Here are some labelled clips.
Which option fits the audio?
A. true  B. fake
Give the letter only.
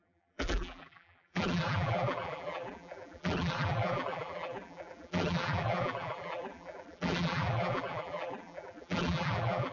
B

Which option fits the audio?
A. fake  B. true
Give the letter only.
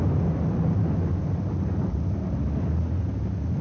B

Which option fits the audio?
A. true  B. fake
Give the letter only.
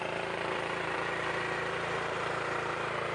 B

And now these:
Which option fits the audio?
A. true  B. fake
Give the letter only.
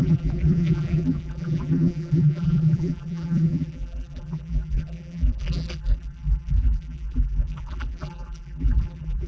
B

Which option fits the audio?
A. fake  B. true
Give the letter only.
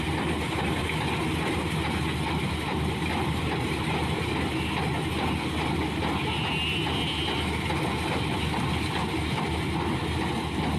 B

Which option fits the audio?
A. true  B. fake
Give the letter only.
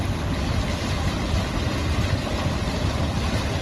A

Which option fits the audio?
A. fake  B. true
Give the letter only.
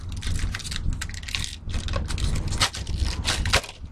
B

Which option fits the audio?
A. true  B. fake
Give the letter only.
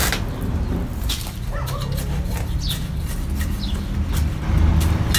A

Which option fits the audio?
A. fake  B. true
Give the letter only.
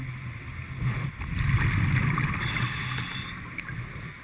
B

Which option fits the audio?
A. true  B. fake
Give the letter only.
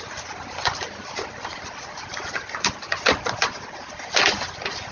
A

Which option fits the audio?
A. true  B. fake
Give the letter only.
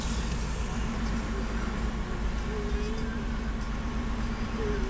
A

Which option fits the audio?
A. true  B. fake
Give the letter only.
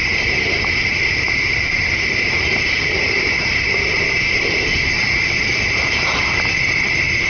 A